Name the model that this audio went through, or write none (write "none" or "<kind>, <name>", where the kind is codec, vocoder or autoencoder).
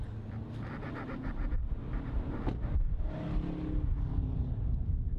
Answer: none